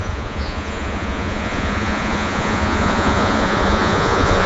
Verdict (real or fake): fake